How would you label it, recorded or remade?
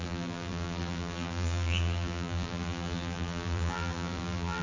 remade